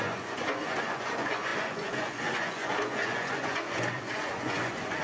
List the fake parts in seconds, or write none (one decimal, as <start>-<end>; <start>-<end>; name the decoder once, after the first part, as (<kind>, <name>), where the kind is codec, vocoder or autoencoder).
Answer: 0.0-5.0 (vocoder, Vocos)